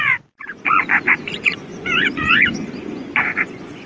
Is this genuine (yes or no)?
no